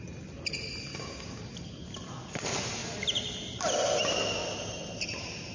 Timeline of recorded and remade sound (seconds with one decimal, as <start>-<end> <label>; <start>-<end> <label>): 0.0-0.9 recorded; 0.9-1.4 remade; 1.4-5.5 recorded